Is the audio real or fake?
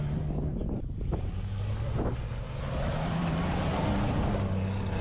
real